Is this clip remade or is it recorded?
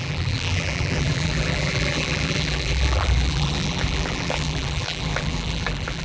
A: remade